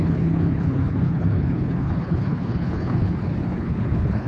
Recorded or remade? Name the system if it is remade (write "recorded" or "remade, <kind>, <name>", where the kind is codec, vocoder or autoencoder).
remade, codec, HILCodec